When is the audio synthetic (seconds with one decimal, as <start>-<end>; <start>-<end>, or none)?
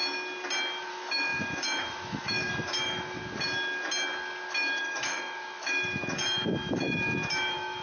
0.9-3.2; 4.8-7.8